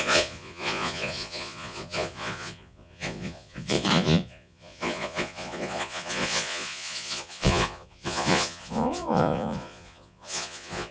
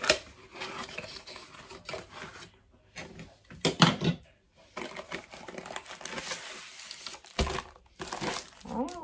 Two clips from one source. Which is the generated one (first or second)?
first